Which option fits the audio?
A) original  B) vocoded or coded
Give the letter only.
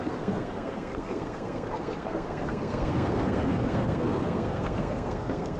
B